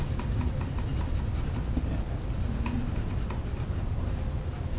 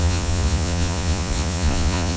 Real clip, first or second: first